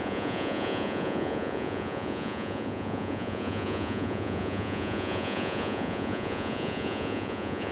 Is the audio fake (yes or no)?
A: yes